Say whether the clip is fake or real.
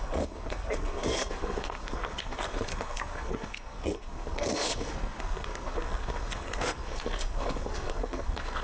fake